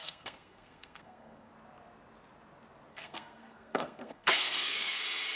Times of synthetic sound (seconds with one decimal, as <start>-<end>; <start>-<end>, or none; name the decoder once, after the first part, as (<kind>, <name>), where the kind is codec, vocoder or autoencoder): 0.0-1.5 (codec, SNAC); 2.9-5.0